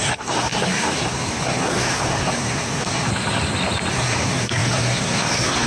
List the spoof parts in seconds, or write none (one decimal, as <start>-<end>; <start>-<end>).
0.0-3.1; 3.9-5.7